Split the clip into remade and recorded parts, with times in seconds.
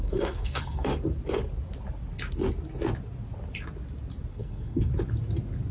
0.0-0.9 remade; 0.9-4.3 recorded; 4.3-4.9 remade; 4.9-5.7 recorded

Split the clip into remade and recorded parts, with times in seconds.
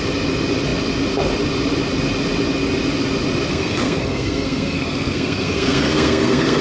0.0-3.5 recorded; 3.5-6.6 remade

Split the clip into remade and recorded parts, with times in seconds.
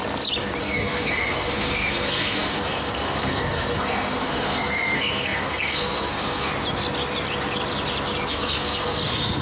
0.0-0.6 recorded; 0.6-6.5 remade; 6.5-8.3 recorded; 8.3-9.4 remade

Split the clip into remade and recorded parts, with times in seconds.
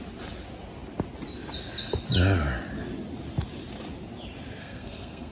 0.0-4.6 recorded; 4.6-5.3 remade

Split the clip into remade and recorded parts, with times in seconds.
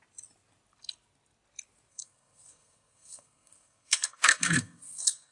0.0-1.9 recorded; 1.9-5.3 remade